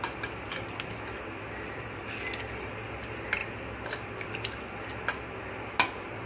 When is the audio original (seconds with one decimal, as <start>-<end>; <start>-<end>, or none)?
0.0-6.3